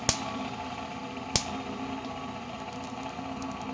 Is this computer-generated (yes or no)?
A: no